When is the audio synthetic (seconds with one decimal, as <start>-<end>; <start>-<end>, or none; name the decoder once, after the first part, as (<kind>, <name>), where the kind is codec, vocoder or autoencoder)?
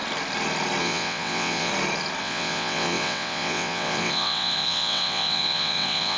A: 0.8-1.7 (vocoder, WaveNeXt); 2.2-6.2